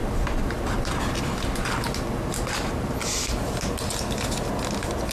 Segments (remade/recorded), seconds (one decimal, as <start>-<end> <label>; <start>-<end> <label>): 0.0-5.1 recorded